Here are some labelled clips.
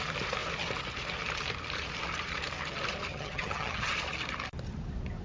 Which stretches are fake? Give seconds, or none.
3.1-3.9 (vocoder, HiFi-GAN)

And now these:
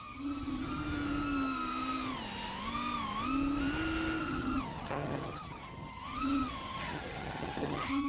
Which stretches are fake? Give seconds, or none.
0.0-0.8 (vocoder, HiFi-GAN); 4.2-8.1

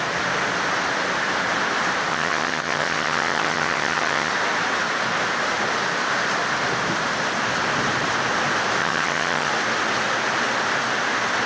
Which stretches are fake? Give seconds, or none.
2.1-4.3 (vocoder, HiFi-GAN); 8.8-9.5

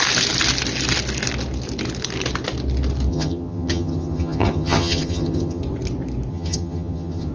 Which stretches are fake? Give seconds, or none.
3.1-5.6 (vocoder, HiFi-GAN); 6.3-7.3

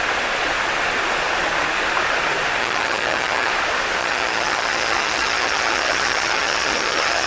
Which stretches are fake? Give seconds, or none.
2.6-3.5 (vocoder, HiFi-GAN); 4.0-7.3